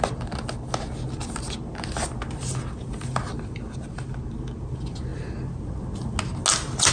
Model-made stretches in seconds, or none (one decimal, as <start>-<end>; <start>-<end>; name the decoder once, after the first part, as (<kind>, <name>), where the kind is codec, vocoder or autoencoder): none